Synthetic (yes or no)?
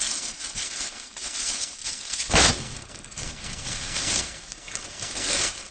yes